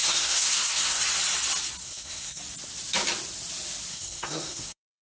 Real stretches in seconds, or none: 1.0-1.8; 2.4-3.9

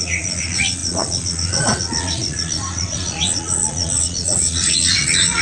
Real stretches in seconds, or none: none

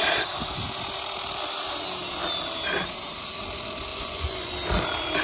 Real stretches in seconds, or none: 0.0-3.9; 4.5-5.2

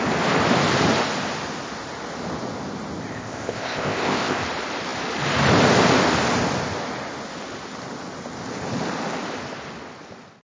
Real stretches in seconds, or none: 0.0-3.1; 4.4-10.4

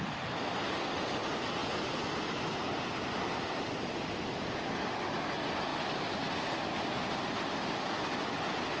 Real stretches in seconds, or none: 0.0-8.8

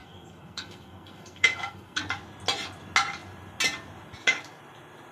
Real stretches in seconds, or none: 2.0-5.1

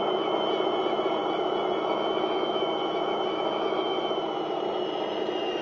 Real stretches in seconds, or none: 0.0-1.2; 4.6-5.6